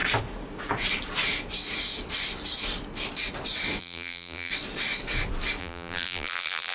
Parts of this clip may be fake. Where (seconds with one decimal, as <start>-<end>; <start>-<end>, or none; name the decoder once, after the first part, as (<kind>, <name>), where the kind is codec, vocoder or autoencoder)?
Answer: 3.8-4.5 (vocoder, BigVGAN v2); 5.6-6.7